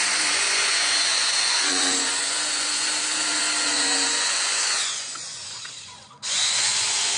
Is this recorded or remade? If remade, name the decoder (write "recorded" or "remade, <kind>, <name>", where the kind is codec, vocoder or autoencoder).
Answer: remade, vocoder, Vocos